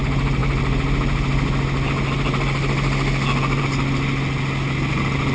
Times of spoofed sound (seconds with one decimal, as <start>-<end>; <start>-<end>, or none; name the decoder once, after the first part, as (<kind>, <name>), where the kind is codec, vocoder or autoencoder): none